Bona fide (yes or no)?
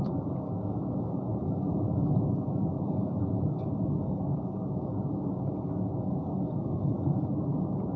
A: no